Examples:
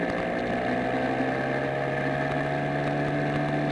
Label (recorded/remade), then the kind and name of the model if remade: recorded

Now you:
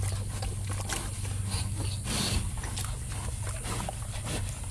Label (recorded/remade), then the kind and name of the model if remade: recorded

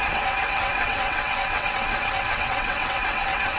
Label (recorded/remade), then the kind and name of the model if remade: remade, vocoder, WaveNeXt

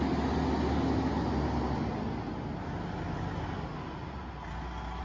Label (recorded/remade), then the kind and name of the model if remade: recorded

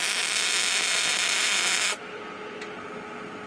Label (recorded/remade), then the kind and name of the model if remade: recorded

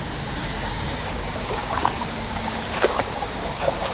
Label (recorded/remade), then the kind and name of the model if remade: remade, codec, DAC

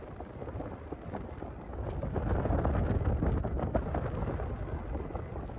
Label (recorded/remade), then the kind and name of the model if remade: recorded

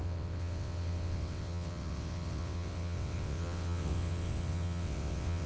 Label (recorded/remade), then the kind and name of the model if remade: remade, vocoder, WaveNeXt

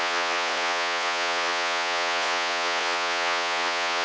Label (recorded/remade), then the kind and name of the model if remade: remade, vocoder, Vocos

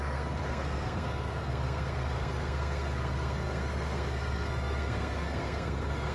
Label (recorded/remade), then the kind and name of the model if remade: remade, codec, SNAC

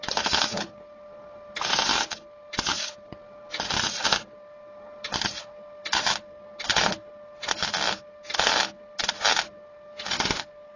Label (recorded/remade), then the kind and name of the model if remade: recorded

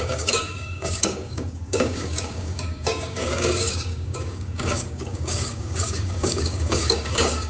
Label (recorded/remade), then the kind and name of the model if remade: remade, codec, DAC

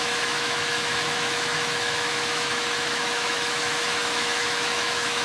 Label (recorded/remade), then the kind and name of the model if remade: remade, autoencoder, DAC-VAE